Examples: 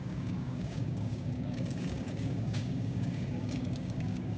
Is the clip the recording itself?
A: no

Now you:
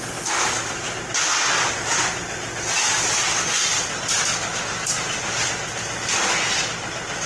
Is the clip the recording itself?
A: yes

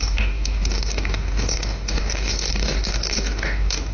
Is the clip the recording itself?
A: no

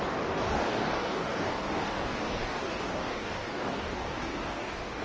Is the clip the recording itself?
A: no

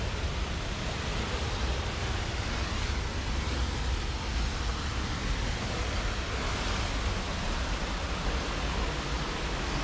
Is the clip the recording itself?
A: yes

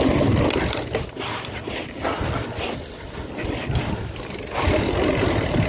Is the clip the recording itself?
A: yes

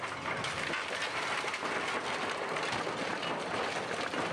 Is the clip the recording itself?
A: yes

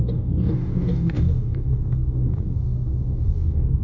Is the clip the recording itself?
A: no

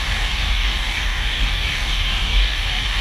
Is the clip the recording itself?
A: no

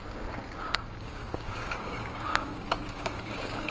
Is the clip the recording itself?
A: no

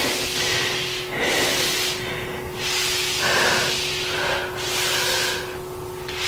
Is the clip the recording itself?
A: yes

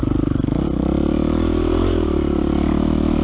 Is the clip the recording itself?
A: yes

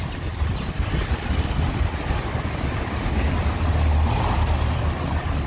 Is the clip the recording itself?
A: yes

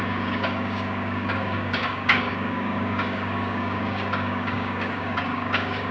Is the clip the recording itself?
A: no